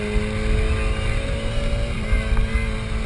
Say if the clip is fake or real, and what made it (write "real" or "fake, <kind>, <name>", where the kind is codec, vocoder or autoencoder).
real